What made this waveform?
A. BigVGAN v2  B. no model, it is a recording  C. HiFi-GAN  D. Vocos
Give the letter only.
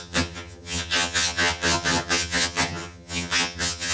C